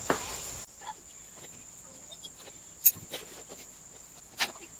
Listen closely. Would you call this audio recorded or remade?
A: recorded